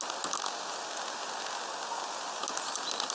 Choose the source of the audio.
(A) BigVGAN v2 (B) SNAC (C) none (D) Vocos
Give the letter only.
C